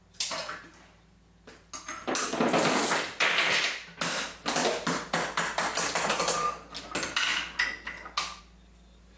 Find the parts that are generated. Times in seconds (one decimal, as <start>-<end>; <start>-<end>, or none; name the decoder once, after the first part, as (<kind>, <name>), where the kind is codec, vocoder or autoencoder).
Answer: none